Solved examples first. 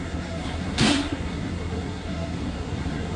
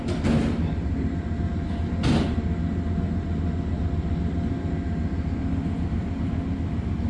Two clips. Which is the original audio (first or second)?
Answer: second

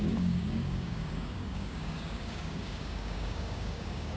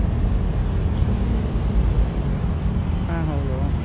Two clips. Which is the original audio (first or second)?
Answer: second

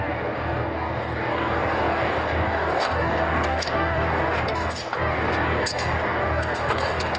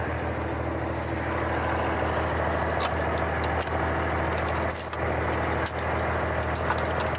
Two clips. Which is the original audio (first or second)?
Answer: second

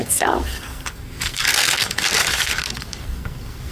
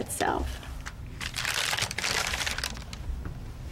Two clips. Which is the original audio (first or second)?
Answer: second